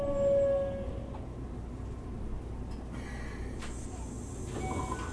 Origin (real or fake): real